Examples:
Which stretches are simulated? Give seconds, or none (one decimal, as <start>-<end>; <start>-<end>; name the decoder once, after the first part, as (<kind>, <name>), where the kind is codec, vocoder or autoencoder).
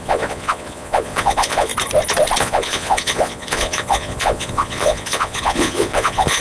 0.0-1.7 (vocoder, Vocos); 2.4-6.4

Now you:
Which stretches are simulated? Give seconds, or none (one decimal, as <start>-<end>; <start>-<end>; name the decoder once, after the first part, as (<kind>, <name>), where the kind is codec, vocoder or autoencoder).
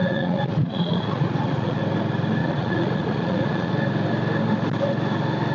0.0-1.8 (vocoder, Vocos); 2.4-3.7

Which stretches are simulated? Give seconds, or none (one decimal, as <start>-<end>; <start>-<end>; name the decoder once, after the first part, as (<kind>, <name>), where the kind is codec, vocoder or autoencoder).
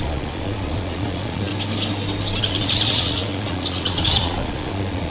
0.0-1.5 (vocoder, Vocos); 2.4-5.1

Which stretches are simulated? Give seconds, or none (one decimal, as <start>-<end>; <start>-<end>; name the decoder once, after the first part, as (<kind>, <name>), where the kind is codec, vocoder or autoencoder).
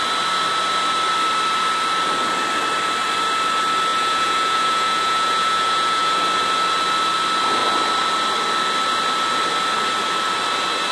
3.9-6.2 (vocoder, Vocos)